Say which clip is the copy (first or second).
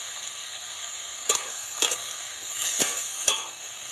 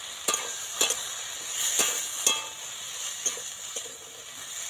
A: first